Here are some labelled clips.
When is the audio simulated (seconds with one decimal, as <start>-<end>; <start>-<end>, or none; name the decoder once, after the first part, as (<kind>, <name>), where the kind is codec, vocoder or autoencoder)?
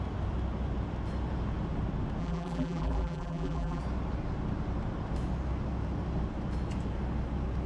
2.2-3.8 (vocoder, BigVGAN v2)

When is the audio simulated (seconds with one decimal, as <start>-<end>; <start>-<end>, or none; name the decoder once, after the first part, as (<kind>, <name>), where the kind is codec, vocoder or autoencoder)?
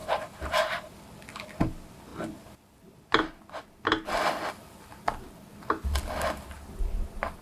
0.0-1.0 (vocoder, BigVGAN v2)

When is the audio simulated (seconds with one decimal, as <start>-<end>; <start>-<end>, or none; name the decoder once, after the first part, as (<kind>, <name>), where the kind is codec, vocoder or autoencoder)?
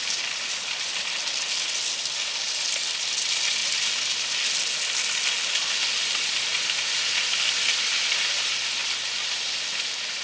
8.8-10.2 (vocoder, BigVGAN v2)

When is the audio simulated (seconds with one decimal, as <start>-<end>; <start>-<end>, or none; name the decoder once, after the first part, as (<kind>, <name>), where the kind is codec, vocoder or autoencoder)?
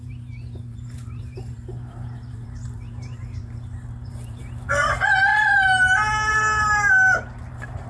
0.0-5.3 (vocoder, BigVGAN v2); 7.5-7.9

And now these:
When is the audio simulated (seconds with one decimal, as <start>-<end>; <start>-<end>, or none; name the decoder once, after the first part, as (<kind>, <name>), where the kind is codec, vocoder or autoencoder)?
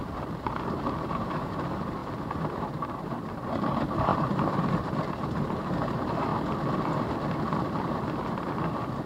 0.0-6.3 (vocoder, BigVGAN v2); 7.4-9.1